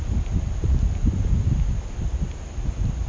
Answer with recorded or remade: recorded